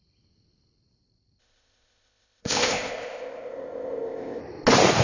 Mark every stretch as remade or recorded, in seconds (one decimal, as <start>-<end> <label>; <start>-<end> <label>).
0.0-1.4 recorded; 1.4-4.4 remade; 4.4-5.0 recorded